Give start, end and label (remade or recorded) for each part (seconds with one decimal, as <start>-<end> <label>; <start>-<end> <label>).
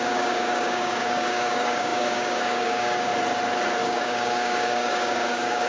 0.0-3.1 remade; 3.1-3.8 recorded; 3.8-5.7 remade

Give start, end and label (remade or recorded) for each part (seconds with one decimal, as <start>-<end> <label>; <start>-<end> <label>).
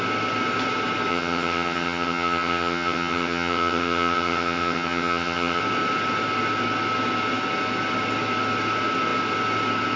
0.0-1.1 recorded; 1.1-5.6 remade; 5.6-10.0 recorded